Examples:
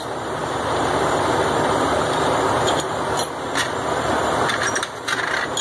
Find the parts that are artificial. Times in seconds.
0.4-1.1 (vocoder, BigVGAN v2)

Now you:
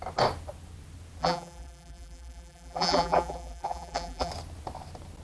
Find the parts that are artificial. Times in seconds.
1.2-4.3 (vocoder, BigVGAN v2)

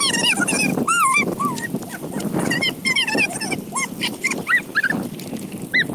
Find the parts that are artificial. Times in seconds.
0.0-0.7 (vocoder, BigVGAN v2); 4.0-4.6

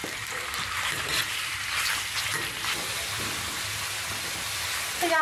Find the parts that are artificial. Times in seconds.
0.0-1.2 (vocoder, BigVGAN v2)

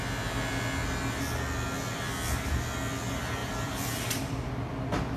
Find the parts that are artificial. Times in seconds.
3.4-4.5 (vocoder, BigVGAN v2)

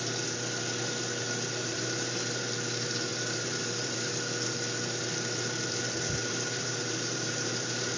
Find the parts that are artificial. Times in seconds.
1.6-2.4 (vocoder, BigVGAN v2); 3.1-4.1; 6.2-8.0

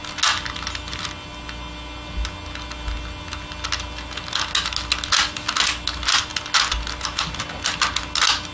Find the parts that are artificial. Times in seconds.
none